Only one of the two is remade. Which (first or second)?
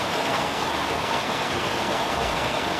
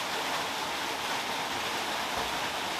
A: first